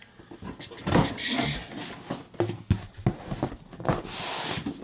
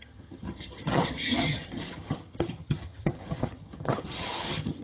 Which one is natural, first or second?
first